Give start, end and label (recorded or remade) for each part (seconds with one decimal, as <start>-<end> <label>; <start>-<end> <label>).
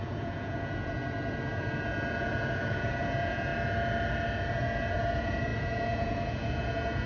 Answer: 0.0-3.5 remade; 3.5-4.5 recorded; 4.5-7.1 remade